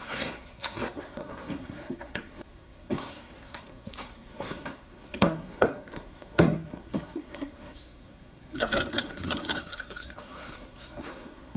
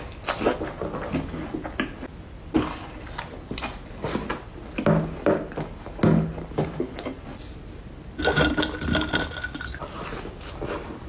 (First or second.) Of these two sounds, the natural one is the second